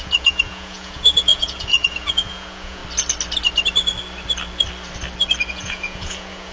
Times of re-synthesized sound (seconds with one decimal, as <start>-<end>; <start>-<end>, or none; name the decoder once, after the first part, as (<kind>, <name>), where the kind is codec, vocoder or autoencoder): 0.0-2.8 (vocoder, Vocos); 5.5-6.5